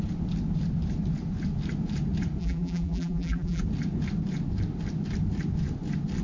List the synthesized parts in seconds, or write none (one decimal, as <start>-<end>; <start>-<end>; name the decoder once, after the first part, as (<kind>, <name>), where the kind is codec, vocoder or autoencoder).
2.4-3.6 (vocoder, BigVGAN v2)